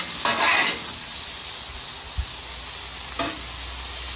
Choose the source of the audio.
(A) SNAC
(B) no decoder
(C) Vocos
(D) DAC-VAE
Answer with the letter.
B